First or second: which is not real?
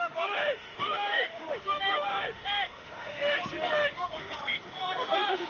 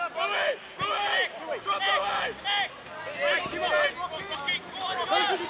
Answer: first